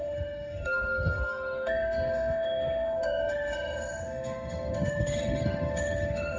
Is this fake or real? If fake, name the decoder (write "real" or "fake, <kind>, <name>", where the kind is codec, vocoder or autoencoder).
fake, autoencoder, DAC-VAE